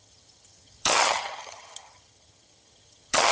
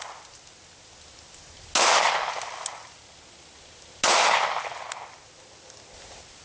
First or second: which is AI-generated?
first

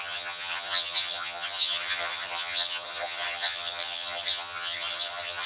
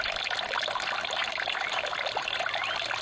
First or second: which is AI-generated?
first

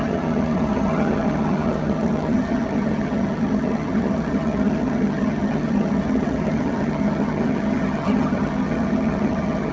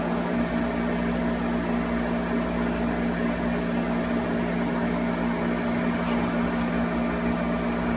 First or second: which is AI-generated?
first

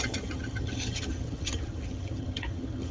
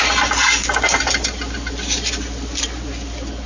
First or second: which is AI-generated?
first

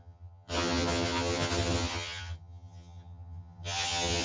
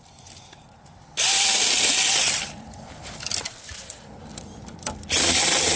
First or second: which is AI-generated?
first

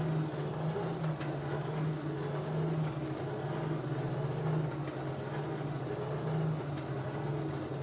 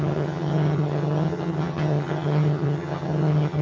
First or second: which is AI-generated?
second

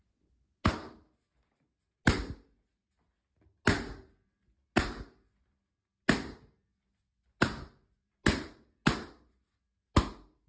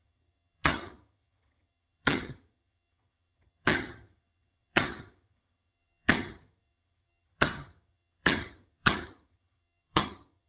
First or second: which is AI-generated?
second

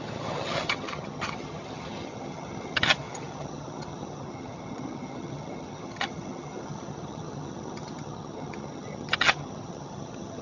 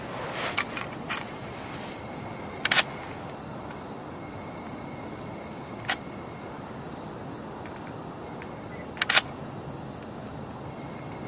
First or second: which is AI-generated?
first